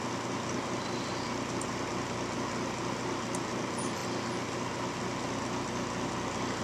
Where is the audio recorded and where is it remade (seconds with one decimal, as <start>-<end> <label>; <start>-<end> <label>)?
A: 0.0-6.6 recorded